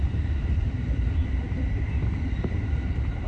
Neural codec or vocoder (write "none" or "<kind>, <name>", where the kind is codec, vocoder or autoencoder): vocoder, BigVGAN v2